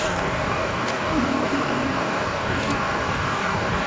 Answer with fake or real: fake